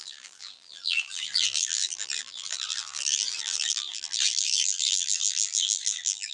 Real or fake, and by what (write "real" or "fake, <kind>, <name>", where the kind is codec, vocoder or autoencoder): fake, vocoder, BigVGAN v2